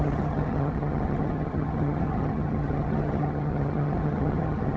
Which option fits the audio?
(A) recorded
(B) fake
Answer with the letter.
B